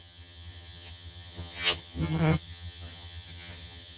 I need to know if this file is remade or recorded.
remade